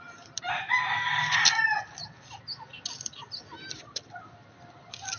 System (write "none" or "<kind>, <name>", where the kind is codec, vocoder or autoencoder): none